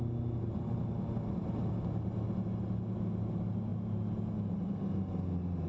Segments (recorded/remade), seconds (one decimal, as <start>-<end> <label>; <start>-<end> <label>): 0.0-5.7 recorded